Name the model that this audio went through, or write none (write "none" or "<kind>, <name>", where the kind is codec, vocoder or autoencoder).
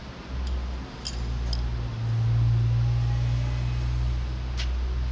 none